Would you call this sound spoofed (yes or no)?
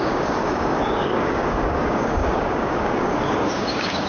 yes